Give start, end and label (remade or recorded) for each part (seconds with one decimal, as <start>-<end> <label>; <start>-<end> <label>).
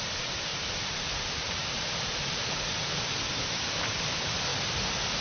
0.0-0.5 recorded; 0.5-2.8 remade; 2.8-5.2 recorded